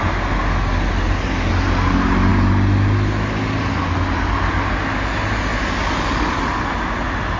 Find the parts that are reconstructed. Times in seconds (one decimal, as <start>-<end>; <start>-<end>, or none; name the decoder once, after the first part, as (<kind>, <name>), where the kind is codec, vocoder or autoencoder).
none